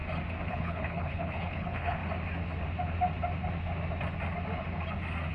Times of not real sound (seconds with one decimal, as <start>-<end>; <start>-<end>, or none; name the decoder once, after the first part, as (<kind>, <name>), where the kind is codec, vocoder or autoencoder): 0.5-2.0 (codec, HILCodec)